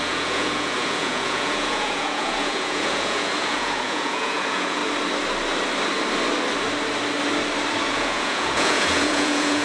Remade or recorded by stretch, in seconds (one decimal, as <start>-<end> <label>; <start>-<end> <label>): 0.0-4.8 remade; 4.8-7.9 recorded; 7.9-9.6 remade